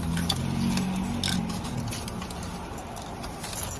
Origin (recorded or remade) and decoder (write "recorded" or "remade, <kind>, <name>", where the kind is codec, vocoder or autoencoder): recorded